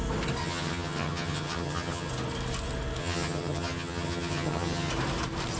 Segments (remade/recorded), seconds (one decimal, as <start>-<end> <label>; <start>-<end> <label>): 0.0-0.4 recorded; 0.4-2.1 remade; 2.1-3.0 recorded; 3.0-4.9 remade; 4.9-5.6 recorded